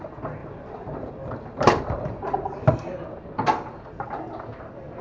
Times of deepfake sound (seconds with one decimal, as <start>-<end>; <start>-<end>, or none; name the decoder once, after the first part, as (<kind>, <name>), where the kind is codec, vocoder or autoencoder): 0.4-1.8 (vocoder, BigVGAN v2)